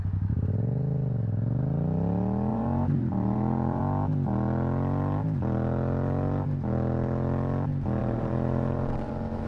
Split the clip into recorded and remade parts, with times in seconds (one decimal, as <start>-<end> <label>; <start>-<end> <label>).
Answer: 0.0-2.5 recorded; 2.5-3.8 remade; 3.8-8.0 recorded; 8.0-9.1 remade; 9.1-9.5 recorded